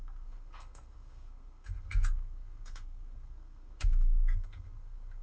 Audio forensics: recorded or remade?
remade